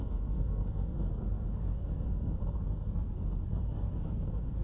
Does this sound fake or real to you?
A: fake